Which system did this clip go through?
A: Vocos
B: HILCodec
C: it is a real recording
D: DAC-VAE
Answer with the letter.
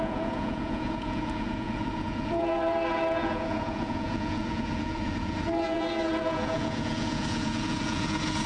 A